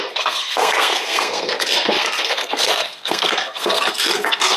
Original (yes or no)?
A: no